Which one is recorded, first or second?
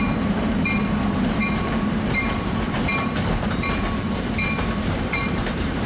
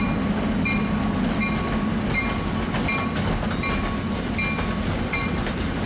second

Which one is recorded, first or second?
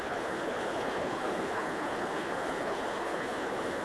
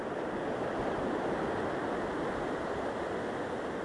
second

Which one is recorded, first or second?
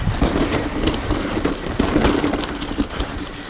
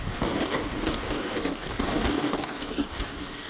first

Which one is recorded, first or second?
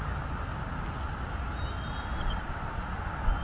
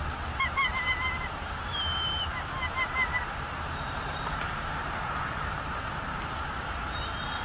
first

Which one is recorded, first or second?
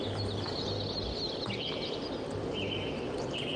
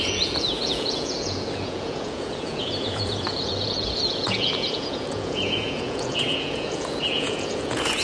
first